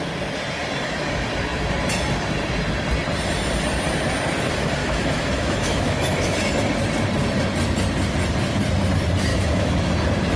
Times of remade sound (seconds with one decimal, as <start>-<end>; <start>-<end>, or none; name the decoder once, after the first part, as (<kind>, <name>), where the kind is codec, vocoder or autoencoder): 4.8-6.4 (autoencoder, DAC-VAE); 9.3-9.9